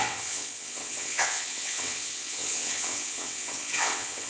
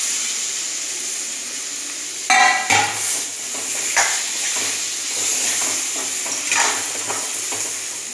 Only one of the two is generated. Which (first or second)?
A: first